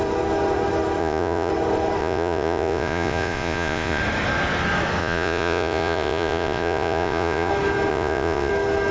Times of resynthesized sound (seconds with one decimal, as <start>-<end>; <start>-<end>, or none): 1.0-1.5; 2.0-4.0; 5.0-7.5; 7.9-8.5